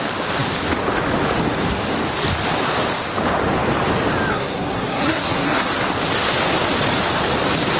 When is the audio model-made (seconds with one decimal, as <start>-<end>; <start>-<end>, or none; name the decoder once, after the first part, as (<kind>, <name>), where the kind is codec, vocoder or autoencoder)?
4.3-5.7 (codec, SNAC)